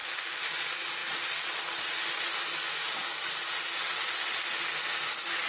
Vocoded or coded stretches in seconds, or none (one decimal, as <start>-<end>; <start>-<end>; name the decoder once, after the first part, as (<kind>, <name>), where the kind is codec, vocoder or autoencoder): 1.0-1.5 (vocoder, BigVGAN v2)